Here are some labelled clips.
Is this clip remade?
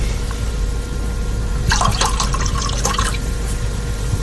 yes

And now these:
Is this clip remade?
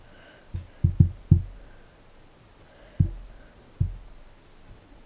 no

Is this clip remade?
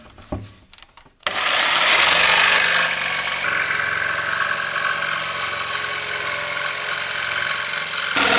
no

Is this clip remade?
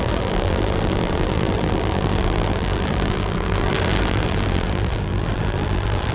yes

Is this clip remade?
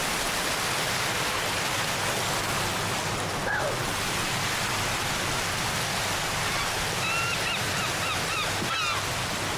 no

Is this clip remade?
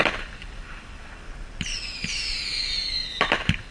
yes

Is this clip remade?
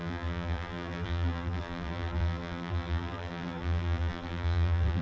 yes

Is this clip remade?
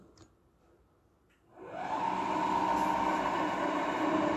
no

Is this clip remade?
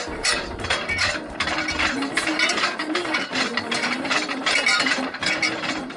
yes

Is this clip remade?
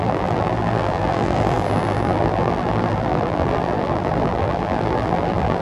yes